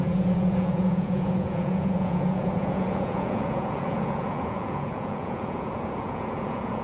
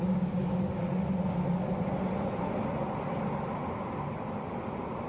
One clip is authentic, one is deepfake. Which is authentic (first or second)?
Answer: second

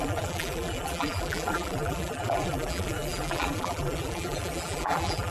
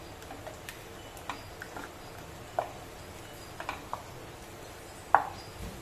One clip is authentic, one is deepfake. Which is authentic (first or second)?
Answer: second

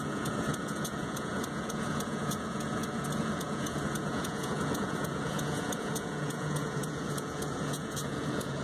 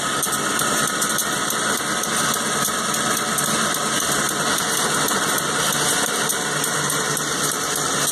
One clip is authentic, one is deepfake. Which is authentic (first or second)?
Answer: second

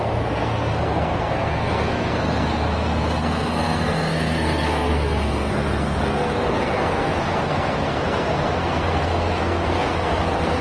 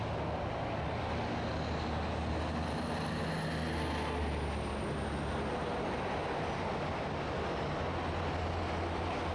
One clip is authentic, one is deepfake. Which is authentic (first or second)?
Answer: second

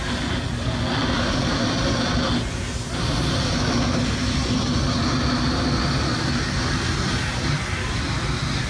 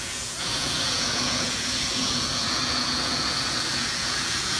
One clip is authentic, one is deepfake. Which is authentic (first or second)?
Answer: first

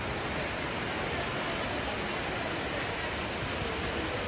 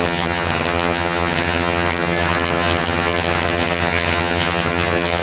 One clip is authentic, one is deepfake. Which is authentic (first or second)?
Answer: first